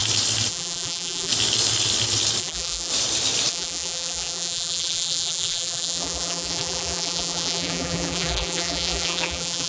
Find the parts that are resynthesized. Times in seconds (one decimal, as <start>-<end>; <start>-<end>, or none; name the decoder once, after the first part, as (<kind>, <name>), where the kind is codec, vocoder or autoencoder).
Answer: 0.5-1.3 (vocoder, BigVGAN v2); 2.4-2.9; 3.5-9.7